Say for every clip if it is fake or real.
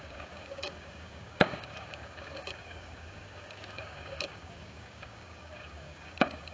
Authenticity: fake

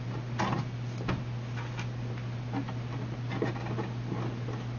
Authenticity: real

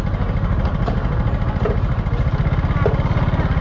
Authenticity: real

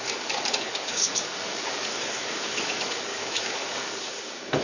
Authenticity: fake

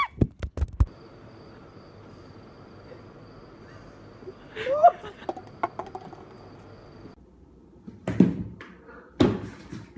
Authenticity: real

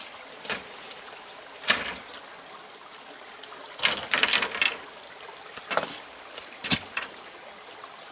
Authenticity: real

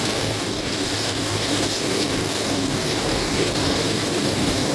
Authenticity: fake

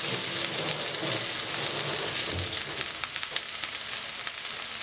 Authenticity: real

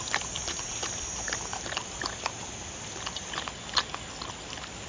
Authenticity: real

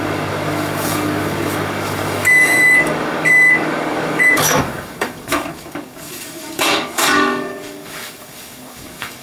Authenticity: fake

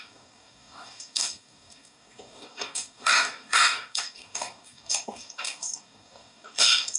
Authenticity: fake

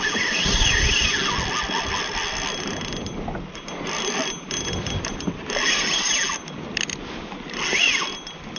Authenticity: real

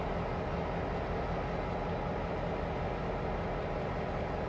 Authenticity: real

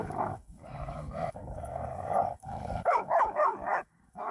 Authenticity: fake